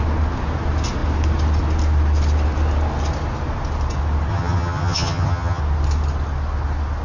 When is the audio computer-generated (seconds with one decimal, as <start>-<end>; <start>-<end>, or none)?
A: 4.3-5.6